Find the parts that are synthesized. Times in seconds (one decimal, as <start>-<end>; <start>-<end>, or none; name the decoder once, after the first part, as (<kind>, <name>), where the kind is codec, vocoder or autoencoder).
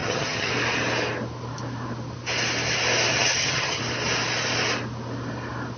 0.0-0.5 (vocoder, HiFi-GAN); 3.1-3.8